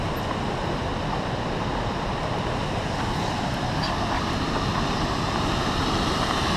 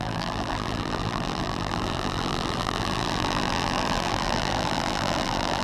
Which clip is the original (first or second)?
first